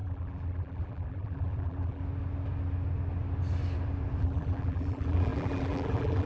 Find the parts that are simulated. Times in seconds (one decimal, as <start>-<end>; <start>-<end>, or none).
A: 0.0-2.0; 4.2-6.3